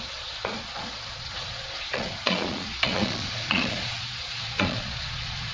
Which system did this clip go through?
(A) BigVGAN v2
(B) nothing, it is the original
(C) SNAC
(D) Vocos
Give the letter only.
D